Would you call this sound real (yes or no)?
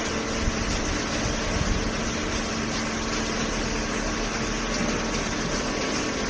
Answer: yes